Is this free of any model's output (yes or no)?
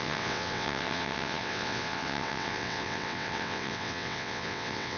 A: no